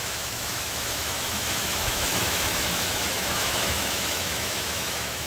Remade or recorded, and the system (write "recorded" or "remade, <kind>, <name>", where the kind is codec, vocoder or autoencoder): remade, autoencoder, DAC-VAE